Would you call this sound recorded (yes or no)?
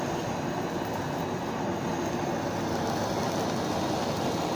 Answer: yes